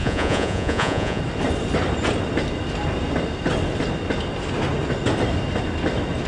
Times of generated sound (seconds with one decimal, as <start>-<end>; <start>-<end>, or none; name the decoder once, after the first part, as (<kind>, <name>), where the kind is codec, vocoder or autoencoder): 0.0-1.2 (vocoder, Vocos)